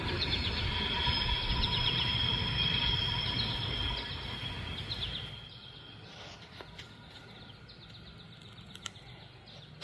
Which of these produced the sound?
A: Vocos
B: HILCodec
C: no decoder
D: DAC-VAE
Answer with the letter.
C